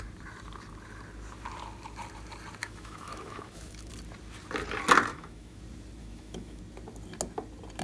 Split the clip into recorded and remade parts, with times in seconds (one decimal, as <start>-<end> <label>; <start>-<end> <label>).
0.0-2.6 recorded; 2.6-3.9 remade; 3.9-5.1 recorded; 5.1-5.6 remade; 5.6-6.0 recorded; 6.0-6.6 remade; 6.6-7.8 recorded